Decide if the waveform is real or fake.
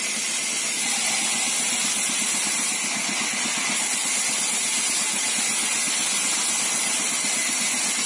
real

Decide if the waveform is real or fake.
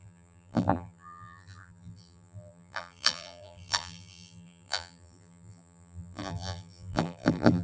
fake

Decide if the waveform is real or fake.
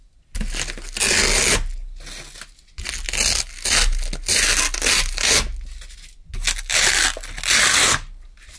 real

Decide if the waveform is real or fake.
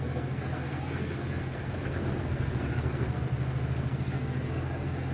fake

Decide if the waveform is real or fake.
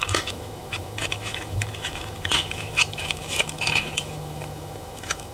fake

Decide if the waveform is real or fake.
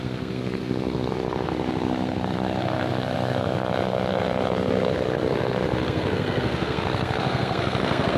fake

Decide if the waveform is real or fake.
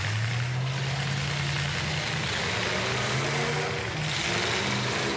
real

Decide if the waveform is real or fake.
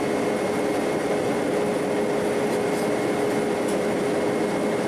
real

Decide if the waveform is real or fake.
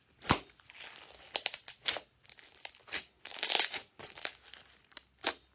real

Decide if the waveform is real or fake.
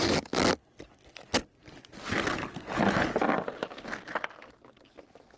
real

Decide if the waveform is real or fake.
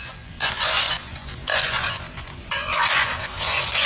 fake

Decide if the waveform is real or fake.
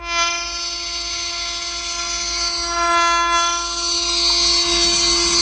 real